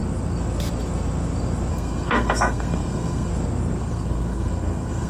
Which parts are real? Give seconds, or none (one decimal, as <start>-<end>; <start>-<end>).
0.0-1.7; 3.3-3.8